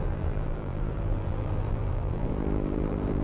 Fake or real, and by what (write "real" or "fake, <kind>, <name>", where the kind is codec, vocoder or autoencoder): fake, vocoder, BigVGAN v2